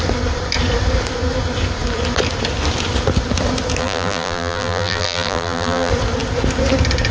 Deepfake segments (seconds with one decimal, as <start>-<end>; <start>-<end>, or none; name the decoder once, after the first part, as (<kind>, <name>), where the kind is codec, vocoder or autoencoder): 3.8-5.9 (vocoder, BigVGAN v2)